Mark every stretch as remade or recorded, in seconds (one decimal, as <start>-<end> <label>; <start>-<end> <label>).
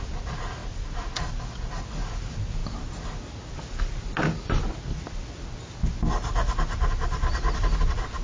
0.0-8.2 recorded